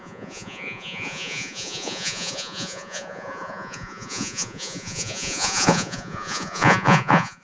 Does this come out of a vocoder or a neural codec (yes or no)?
yes